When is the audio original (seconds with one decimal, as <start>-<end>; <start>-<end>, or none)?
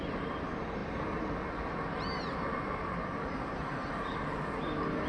0.0-5.1